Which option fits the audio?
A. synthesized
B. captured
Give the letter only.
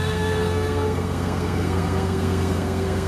A